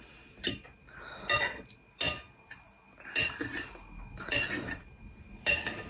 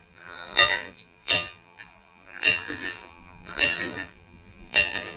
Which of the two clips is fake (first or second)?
second